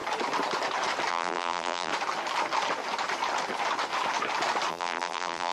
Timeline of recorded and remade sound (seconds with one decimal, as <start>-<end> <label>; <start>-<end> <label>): 0.0-1.1 recorded; 1.1-1.9 remade; 1.9-4.7 recorded; 4.7-5.5 remade